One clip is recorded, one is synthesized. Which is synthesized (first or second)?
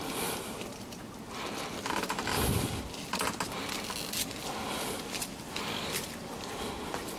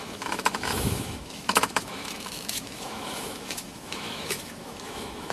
second